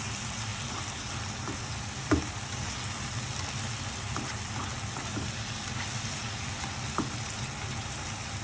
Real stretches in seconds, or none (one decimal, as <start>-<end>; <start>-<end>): 0.0-8.4